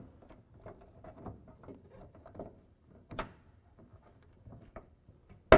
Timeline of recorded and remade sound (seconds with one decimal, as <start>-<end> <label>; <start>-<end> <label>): 0.0-1.7 recorded; 1.7-5.1 remade; 5.1-5.6 recorded